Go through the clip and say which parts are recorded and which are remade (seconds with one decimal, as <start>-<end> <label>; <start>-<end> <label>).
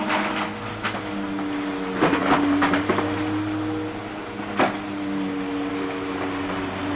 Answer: 0.0-7.0 recorded